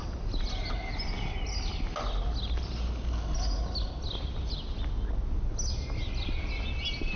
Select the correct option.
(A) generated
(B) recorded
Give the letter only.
B